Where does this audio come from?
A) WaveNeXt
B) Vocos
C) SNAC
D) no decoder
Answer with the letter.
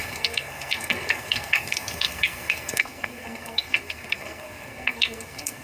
C